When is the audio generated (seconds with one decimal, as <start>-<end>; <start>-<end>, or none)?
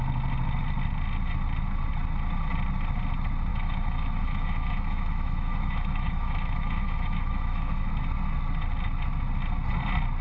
3.5-7.9